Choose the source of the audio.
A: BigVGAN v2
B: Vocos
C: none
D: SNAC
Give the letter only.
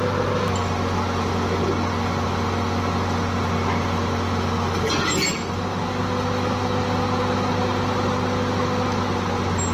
C